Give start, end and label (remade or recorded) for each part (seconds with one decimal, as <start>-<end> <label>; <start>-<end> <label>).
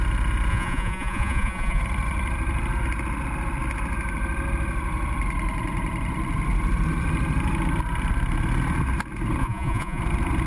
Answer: 0.0-0.5 recorded; 0.5-1.8 remade; 1.8-9.4 recorded; 9.4-10.0 remade; 10.0-10.5 recorded